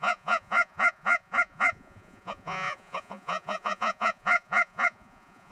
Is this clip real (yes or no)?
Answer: no